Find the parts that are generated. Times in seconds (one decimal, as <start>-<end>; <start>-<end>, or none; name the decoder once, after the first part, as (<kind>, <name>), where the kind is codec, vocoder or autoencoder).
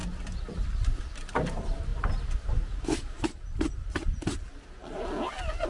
none